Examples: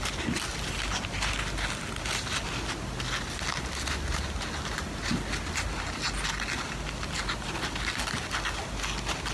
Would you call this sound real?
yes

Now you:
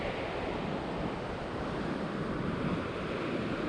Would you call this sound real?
yes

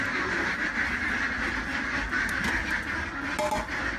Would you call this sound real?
yes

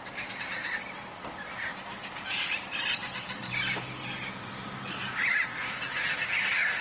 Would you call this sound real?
yes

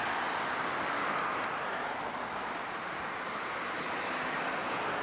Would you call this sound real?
yes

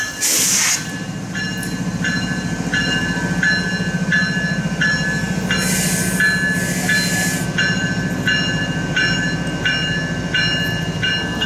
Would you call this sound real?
yes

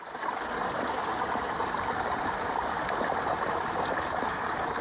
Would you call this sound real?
yes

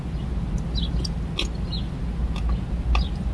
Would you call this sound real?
yes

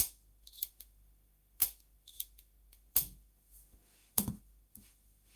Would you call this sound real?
no